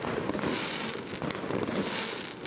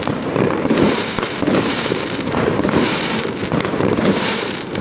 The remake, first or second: second